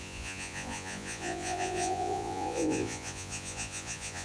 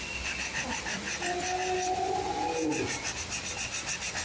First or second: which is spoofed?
first